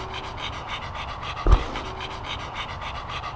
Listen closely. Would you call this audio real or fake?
real